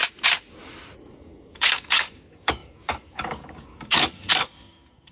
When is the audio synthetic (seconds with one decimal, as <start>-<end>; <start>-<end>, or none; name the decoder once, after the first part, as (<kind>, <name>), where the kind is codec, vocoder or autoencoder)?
1.1-5.1 (codec, DAC)